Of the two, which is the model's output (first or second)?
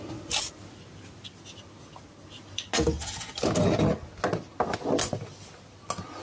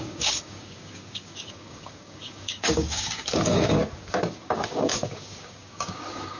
second